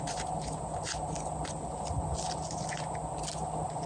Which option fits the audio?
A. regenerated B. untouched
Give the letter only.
B